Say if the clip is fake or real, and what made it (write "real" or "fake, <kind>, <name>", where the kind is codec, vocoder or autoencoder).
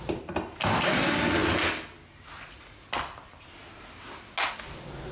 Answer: real